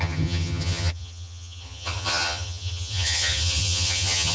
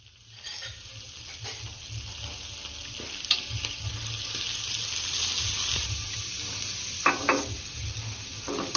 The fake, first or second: first